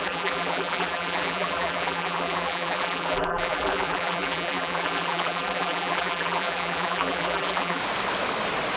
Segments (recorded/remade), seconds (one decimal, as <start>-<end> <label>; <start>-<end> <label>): 0.0-7.8 remade; 7.8-8.8 recorded